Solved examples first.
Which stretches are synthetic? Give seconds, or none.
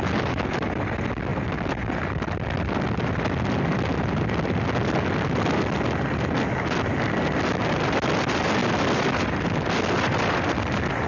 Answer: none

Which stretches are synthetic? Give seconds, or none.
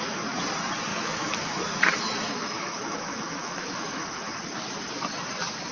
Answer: 0.9-4.3 (autoencoder, DAC-VAE)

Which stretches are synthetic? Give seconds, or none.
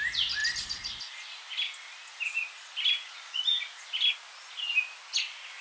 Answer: none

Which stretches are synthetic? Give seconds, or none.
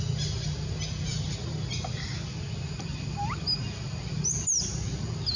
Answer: none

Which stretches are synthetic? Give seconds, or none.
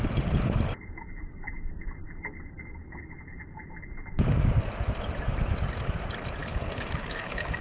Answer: 6.4-7.6 (codec, DAC)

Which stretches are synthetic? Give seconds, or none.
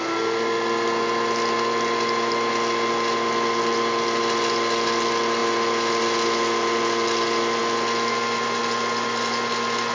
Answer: none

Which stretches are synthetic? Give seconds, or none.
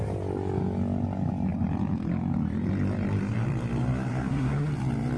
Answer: 4.1-4.7 (codec, SNAC)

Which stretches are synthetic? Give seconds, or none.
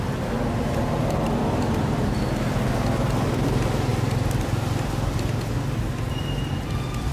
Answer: none